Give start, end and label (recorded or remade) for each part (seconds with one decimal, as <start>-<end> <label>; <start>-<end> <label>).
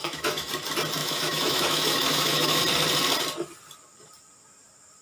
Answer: 0.0-0.5 remade; 0.5-1.0 recorded; 1.0-2.6 remade; 2.6-5.0 recorded